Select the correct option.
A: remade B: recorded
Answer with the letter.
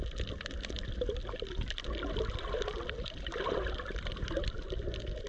B